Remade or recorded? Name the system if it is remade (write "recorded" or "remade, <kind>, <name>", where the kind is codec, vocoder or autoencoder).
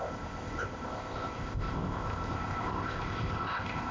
remade, codec, ZipCodec